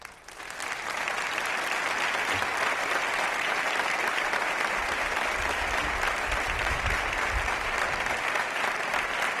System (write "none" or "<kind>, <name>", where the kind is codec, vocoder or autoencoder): none